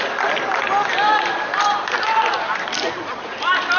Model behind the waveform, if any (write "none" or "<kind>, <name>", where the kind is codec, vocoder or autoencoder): none